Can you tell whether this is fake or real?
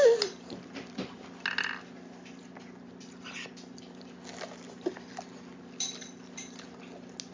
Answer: real